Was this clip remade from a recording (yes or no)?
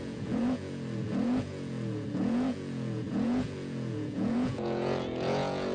yes